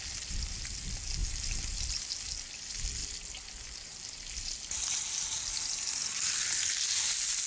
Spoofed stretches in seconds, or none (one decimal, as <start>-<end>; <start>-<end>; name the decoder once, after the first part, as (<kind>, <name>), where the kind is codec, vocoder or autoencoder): 1.2-2.0 (vocoder, BigVGAN v2)